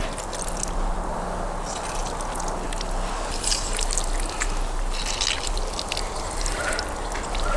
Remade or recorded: recorded